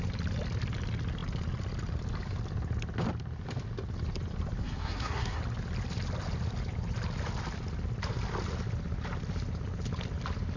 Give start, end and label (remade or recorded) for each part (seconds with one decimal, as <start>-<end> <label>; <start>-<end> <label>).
0.0-4.6 recorded; 4.6-5.4 remade; 5.4-10.6 recorded